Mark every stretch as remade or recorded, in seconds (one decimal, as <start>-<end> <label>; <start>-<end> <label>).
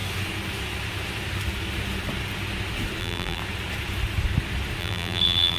0.0-3.0 recorded; 3.0-3.4 remade; 3.4-4.8 recorded; 4.8-5.6 remade